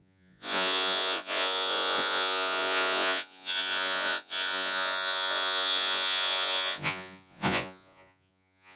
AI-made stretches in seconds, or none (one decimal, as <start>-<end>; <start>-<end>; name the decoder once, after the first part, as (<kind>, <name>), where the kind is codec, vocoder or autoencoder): 0.0-8.8 (vocoder, Vocos)